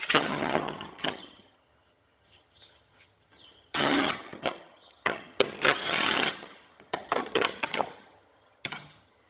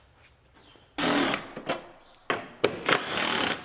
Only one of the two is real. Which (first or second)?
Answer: second